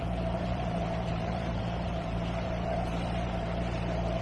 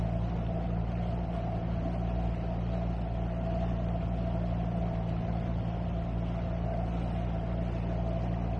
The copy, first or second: first